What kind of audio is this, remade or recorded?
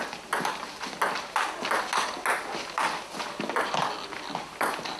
recorded